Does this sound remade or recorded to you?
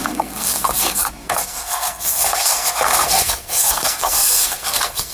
remade